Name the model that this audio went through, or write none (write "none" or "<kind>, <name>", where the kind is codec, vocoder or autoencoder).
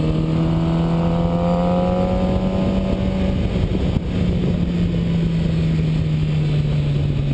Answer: none